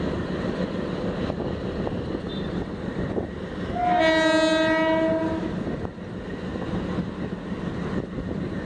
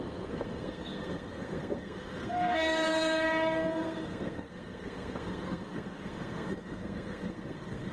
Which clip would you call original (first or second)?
first